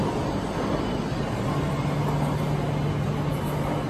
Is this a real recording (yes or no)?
yes